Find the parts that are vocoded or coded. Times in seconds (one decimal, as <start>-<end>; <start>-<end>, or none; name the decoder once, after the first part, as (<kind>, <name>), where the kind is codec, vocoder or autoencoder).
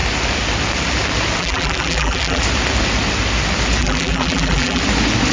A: 1.4-2.4 (vocoder, BigVGAN v2); 3.8-4.8